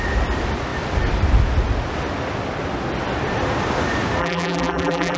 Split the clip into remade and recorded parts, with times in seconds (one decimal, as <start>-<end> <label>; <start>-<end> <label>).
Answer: 0.0-4.2 recorded; 4.2-5.2 remade

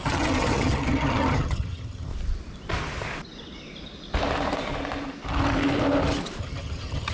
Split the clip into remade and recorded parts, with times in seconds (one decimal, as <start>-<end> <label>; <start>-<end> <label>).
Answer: 0.0-2.1 remade; 2.1-6.4 recorded; 6.4-7.1 remade

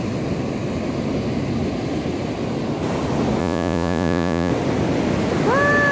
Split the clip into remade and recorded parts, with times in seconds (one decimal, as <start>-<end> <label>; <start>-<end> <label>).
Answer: 0.0-3.4 recorded; 3.4-4.5 remade; 4.5-5.9 recorded

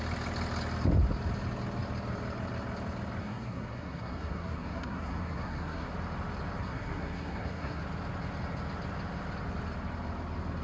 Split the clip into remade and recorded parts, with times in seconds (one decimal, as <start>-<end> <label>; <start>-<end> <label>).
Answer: 0.0-3.2 recorded; 3.2-5.9 remade; 5.9-6.6 recorded; 6.6-7.8 remade; 7.8-10.6 recorded

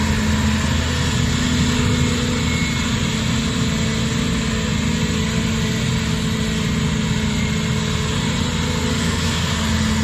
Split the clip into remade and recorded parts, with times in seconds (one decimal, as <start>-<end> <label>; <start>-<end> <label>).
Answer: 0.0-9.0 recorded; 9.0-9.5 remade; 9.5-10.0 recorded